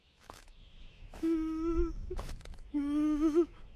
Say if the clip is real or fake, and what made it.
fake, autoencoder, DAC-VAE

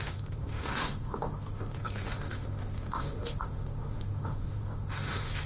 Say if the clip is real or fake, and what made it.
fake, autoencoder, DAC-VAE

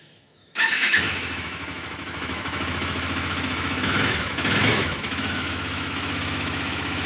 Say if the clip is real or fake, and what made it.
fake, autoencoder, DAC-VAE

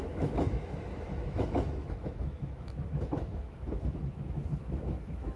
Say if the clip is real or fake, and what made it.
fake, autoencoder, DAC-VAE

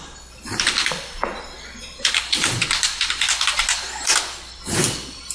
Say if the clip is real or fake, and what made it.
real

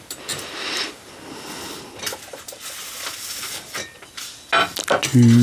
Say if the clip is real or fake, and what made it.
real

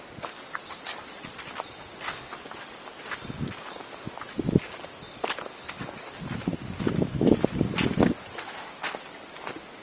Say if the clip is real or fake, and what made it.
real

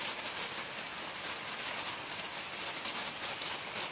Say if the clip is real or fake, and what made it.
real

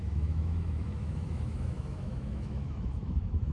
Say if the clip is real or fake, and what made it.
fake, autoencoder, DAC-VAE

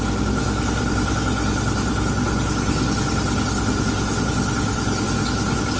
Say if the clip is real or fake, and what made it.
real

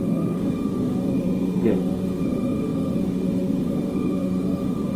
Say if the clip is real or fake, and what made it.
fake, autoencoder, DAC-VAE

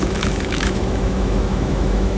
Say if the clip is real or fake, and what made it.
fake, autoencoder, DAC-VAE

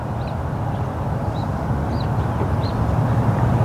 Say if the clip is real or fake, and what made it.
real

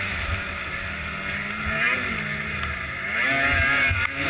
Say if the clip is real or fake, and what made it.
real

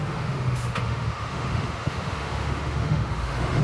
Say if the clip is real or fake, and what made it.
fake, autoencoder, DAC-VAE